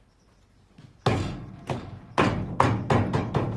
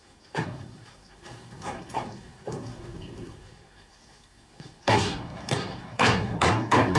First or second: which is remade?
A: second